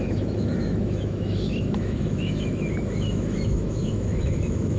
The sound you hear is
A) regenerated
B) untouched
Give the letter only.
A